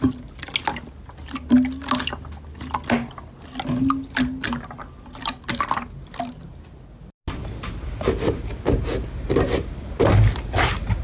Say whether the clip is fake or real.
real